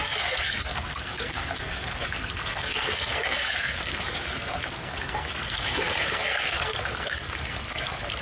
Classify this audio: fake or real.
fake